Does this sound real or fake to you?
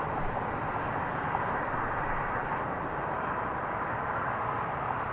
real